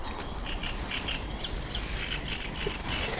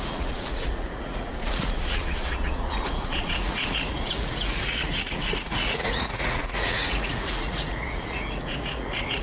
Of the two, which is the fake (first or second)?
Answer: second